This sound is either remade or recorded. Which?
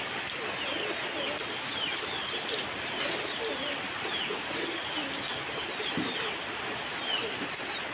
recorded